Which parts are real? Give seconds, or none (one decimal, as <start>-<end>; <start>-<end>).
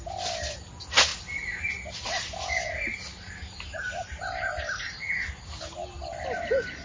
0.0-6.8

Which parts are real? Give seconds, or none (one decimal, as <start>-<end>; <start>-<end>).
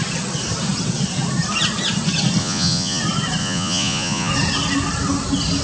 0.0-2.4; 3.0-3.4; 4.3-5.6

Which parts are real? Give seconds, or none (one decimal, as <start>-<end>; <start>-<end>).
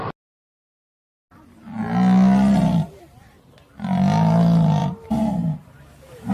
0.0-4.8